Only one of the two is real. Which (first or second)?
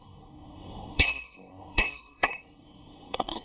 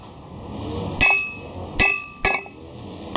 second